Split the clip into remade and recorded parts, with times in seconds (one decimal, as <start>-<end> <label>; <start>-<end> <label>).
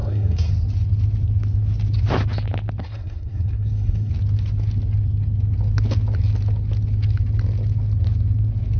0.0-0.5 remade; 0.5-2.8 recorded; 2.8-4.1 remade; 4.1-8.8 recorded